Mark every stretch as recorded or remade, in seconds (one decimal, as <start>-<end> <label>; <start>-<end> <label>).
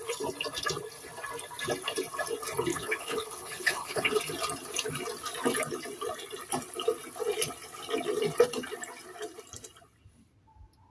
0.0-2.7 recorded; 2.7-4.2 remade; 4.2-10.9 recorded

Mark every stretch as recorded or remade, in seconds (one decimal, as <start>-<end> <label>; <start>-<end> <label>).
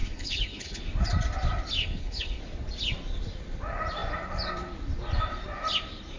0.0-0.8 remade; 0.8-1.8 recorded; 1.8-2.4 remade; 2.4-6.2 recorded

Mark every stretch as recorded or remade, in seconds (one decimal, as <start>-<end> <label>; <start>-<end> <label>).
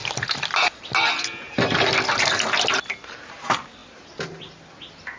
0.0-5.2 recorded